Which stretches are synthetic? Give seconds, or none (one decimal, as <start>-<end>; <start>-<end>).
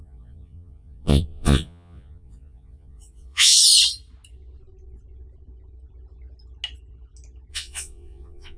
0.0-3.6; 7.5-8.6